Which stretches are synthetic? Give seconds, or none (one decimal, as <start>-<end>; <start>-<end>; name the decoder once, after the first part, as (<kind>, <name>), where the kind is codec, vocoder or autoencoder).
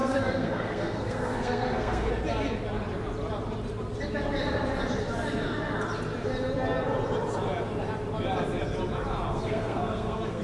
0.0-2.1 (codec, SNAC); 9.3-10.4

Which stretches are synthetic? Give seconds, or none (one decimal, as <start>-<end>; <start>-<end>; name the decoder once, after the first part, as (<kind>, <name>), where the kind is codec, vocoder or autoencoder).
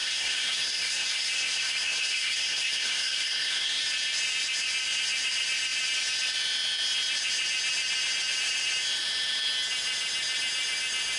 0.0-3.8 (codec, SNAC)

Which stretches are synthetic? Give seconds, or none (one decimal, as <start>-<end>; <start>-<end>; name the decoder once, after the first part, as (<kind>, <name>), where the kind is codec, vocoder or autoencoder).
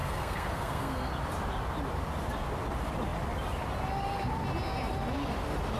0.0-1.1 (codec, SNAC)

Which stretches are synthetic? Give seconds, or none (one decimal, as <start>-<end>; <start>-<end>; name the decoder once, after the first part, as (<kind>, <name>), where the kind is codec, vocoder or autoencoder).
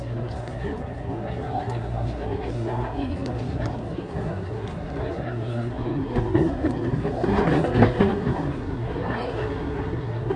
0.0-10.4 (codec, SNAC)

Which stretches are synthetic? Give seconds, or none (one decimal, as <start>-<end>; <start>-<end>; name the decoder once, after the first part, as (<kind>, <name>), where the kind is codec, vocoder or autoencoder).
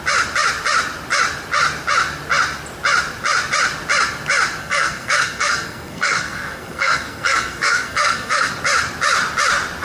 4.6-8.5 (codec, SNAC)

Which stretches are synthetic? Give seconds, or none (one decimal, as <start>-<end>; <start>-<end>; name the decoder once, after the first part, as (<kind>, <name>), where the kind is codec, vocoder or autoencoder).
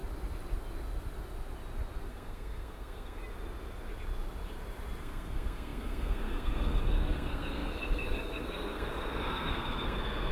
2.1-3.2 (codec, SNAC); 5.0-10.3